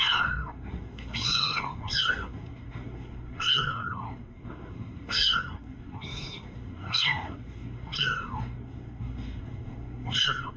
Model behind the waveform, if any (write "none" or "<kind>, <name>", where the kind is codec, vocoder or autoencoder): codec, SNAC